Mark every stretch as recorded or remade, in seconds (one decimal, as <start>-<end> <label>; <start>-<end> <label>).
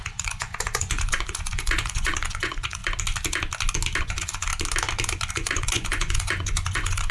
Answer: 0.0-2.8 remade; 2.8-4.0 recorded; 4.0-4.5 remade; 4.5-5.3 recorded; 5.3-7.1 remade